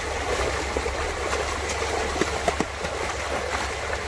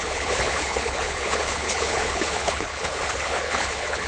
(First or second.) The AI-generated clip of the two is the second